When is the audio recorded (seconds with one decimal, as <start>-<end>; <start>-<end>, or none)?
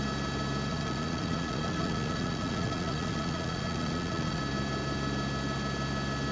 0.0-0.7; 4.4-6.3